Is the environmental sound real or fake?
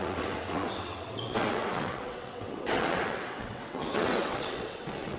fake